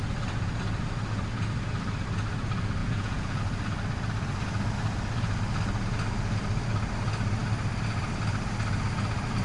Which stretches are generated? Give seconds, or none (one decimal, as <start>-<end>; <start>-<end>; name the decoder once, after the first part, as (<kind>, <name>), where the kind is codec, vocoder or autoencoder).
2.8-3.4 (vocoder, Vocos)